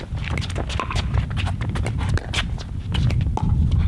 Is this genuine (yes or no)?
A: yes